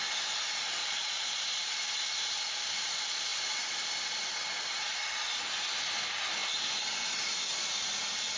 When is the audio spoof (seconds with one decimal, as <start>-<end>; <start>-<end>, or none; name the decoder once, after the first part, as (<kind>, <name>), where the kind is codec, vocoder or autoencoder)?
0.8-1.6 (vocoder, Vocos)